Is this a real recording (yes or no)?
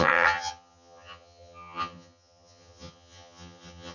no